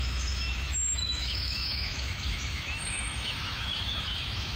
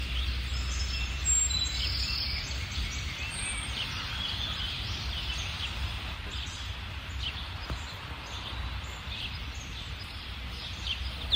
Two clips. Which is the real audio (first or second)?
second